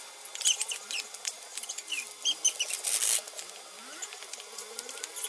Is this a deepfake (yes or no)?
no